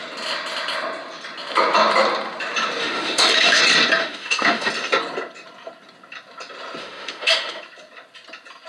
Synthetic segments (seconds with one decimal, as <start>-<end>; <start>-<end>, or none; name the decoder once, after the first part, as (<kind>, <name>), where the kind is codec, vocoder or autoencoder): 2.8-3.6 (autoencoder, DAC-VAE); 4.0-4.7; 6.8-7.6